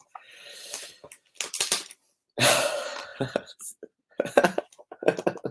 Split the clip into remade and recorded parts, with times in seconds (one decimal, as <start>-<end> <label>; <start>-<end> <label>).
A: 0.0-5.5 recorded